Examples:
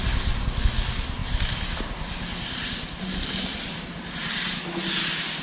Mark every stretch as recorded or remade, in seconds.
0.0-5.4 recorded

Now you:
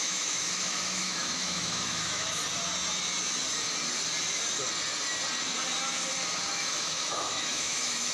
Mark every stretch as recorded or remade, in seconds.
0.0-2.4 remade; 2.4-6.5 recorded; 6.5-8.1 remade

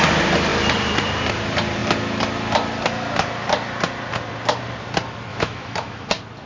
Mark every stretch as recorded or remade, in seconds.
0.0-5.3 recorded; 5.3-6.1 remade; 6.1-6.5 recorded

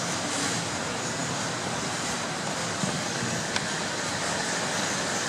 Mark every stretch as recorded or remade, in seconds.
0.0-5.3 recorded